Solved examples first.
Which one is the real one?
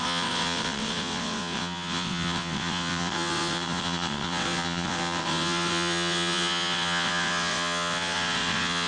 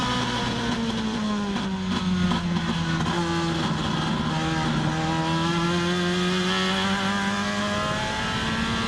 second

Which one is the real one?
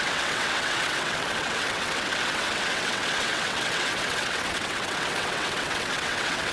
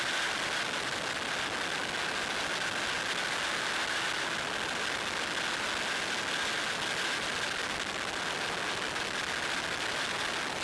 second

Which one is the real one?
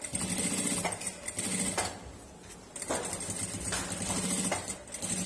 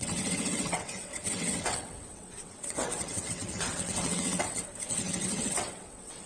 first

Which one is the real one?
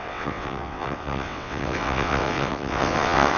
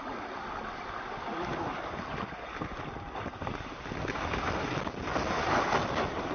second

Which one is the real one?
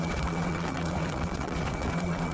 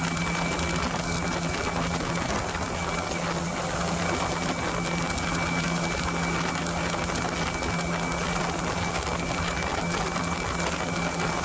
second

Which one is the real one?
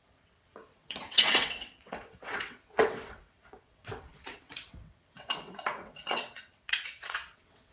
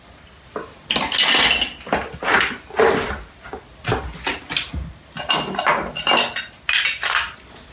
second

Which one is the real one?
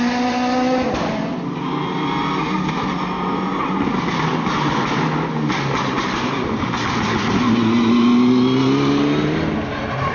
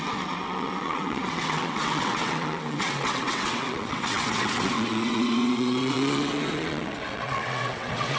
first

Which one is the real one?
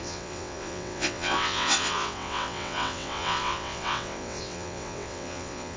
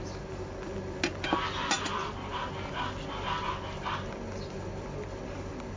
second